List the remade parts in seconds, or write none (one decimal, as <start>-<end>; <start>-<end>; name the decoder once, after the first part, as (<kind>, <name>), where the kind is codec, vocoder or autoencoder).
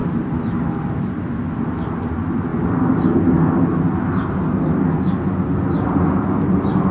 0.0-2.5 (vocoder, BigVGAN v2)